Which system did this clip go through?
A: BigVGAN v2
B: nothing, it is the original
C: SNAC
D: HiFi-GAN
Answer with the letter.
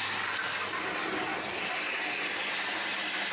B